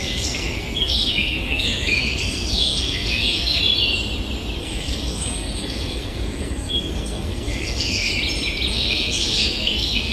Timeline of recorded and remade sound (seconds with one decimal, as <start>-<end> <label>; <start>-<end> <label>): 0.0-3.6 remade; 3.6-4.6 recorded; 4.6-8.1 remade; 8.1-8.7 recorded; 8.7-10.1 remade